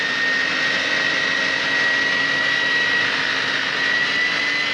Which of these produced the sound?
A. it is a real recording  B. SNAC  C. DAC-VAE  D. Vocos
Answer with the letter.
A